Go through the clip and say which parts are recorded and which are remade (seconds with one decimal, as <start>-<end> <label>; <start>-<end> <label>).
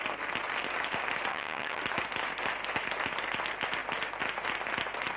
0.0-1.3 recorded; 1.3-1.8 remade; 1.8-5.2 recorded